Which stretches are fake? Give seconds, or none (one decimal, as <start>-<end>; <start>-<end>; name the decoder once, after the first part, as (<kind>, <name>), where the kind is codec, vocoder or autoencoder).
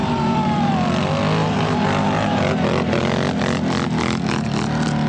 0.0-0.7 (vocoder, BigVGAN v2); 1.4-3.0